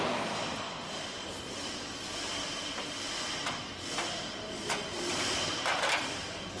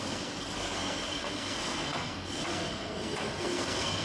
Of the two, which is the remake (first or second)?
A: second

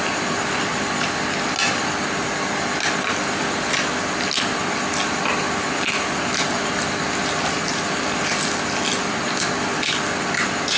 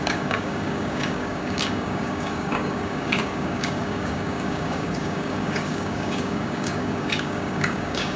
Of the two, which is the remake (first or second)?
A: second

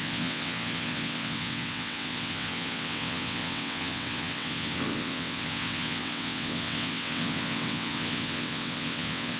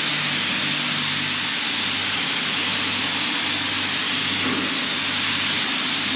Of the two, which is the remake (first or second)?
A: first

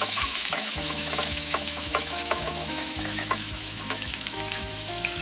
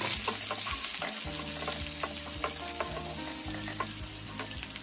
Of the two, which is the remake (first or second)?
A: first